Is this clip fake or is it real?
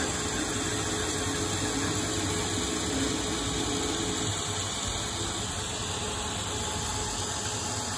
real